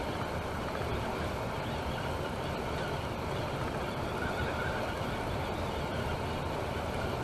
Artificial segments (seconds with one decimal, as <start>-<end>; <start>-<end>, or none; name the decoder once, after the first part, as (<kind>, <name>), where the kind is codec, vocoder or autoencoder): 0.0-7.2 (vocoder, BigVGAN v2)